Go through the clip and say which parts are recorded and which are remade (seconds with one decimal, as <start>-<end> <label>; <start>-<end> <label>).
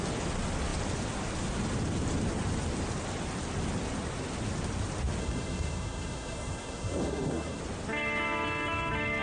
0.0-5.2 recorded; 5.2-7.6 remade; 7.6-9.2 recorded